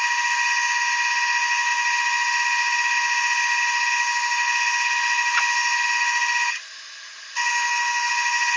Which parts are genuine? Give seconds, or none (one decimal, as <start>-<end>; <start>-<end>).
0.0-7.5; 8.1-8.6